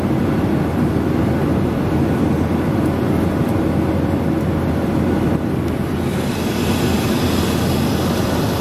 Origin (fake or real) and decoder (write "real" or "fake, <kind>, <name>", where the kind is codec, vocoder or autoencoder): real